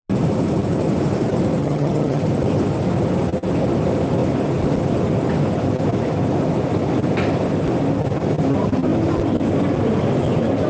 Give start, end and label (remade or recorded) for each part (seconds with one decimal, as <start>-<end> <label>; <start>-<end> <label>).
0.0-1.6 recorded; 1.6-2.2 remade; 2.2-10.7 recorded